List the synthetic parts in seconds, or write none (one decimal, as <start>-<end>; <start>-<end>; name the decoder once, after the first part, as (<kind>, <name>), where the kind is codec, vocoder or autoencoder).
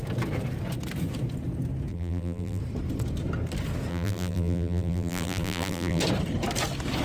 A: 1.9-2.6 (vocoder, BigVGAN v2); 3.9-6.0